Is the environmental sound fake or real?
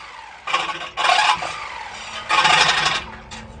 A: real